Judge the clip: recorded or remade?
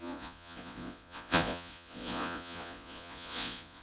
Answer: remade